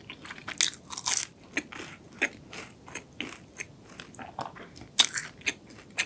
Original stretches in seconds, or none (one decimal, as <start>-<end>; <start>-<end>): 0.0-6.1